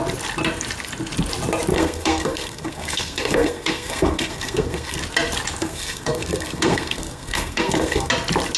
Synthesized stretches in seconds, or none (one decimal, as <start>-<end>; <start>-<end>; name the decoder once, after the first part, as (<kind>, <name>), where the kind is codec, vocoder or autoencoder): 1.7-5.0 (codec, SNAC); 5.6-8.1